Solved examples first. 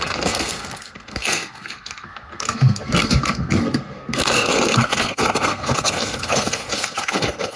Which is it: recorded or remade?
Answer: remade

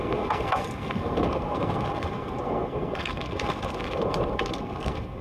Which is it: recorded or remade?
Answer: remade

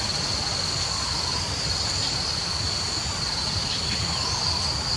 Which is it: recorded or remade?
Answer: recorded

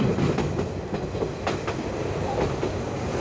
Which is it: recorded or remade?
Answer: recorded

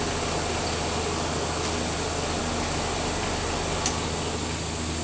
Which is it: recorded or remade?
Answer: recorded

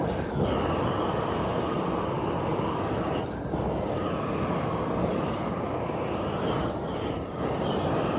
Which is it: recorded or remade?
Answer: recorded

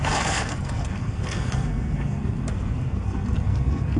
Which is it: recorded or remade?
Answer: remade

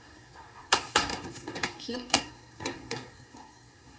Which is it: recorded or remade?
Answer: remade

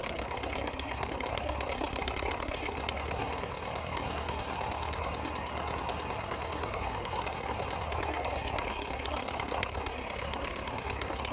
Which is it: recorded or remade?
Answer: remade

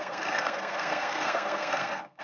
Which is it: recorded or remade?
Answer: remade